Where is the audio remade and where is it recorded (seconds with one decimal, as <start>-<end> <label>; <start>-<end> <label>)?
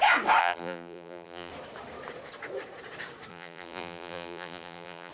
0.0-0.4 recorded; 0.4-1.5 remade; 1.5-3.3 recorded; 3.3-5.1 remade